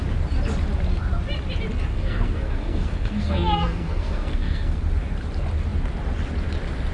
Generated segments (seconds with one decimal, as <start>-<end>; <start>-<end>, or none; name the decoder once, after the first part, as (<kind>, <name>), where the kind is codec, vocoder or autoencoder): 1.9-4.8 (codec, SNAC)